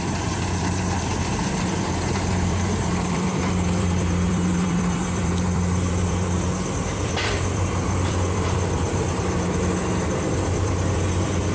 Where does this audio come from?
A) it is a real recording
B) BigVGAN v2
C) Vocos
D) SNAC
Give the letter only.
B